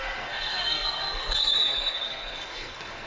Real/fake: fake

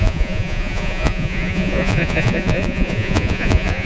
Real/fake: fake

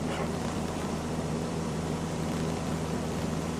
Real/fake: fake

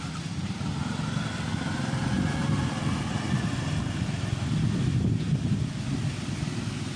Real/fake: real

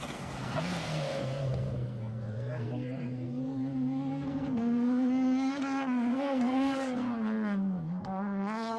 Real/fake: fake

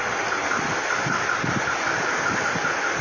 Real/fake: real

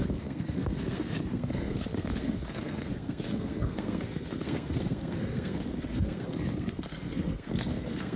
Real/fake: fake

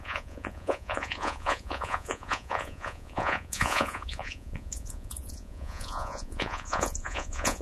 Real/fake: fake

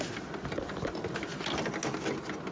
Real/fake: real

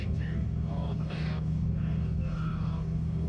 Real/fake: fake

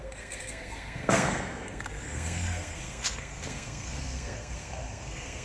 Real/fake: fake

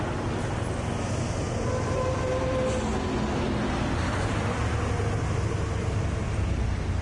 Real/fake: real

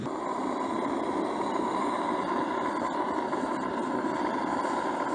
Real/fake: real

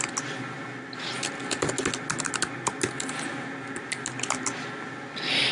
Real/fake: real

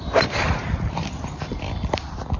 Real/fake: real